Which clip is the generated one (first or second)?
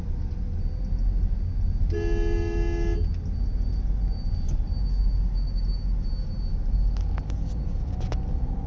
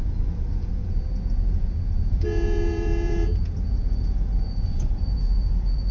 second